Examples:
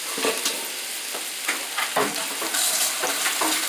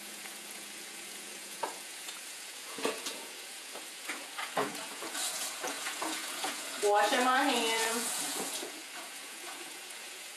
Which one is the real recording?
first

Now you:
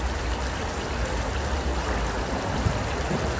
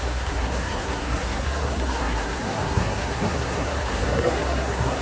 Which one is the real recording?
first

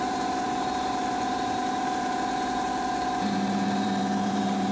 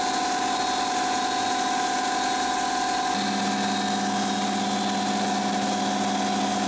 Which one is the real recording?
second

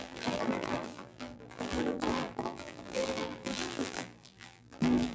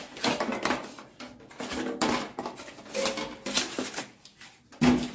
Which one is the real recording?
second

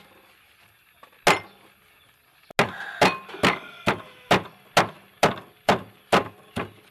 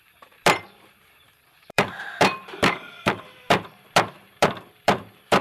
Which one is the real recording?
first